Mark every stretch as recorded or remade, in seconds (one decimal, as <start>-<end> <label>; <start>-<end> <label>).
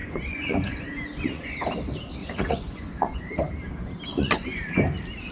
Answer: 0.0-1.5 remade; 1.5-2.2 recorded; 2.2-3.2 remade; 3.2-4.1 recorded; 4.1-4.6 remade; 4.6-5.3 recorded